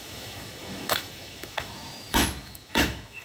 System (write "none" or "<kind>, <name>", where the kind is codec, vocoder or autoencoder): autoencoder, DAC-VAE